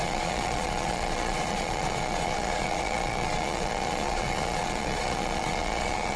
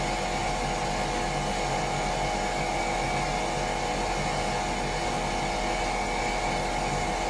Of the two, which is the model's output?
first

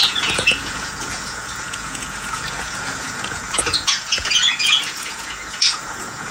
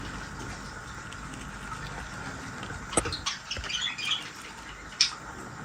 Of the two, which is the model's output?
first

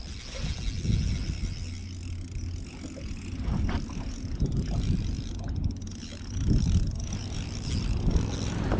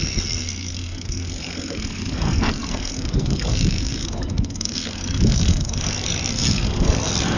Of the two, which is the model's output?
second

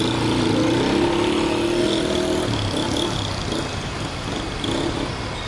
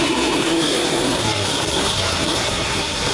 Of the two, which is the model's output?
second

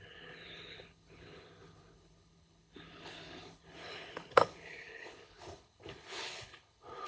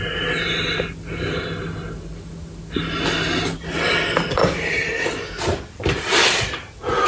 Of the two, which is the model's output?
first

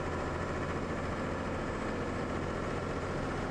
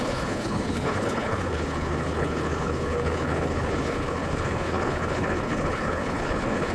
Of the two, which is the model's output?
second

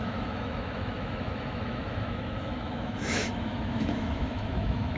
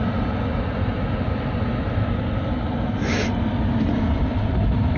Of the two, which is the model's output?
first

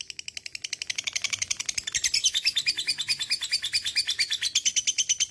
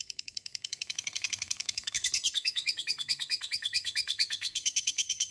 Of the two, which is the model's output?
second